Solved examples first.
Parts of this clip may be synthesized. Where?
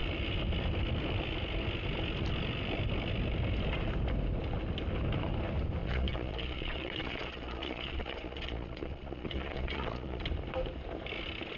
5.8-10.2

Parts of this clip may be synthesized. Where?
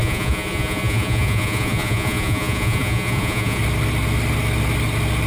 0.0-3.6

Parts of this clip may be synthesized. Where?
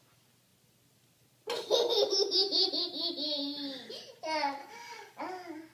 4.6-5.2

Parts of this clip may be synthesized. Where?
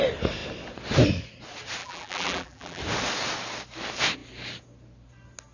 1.8-2.8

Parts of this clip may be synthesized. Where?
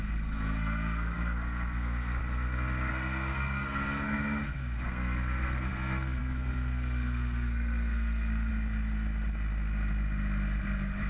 0.0-2.2; 2.9-8.5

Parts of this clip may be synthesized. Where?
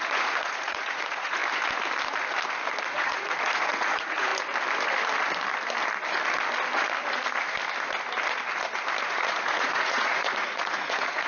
0.0-1.4; 2.8-4.3; 9.0-11.3